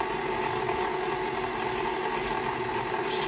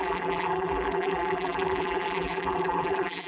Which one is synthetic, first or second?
second